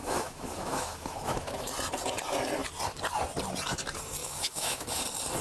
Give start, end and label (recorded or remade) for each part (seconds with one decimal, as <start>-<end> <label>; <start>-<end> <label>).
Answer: 0.0-1.7 remade; 1.7-4.2 recorded; 4.2-4.9 remade; 4.9-5.4 recorded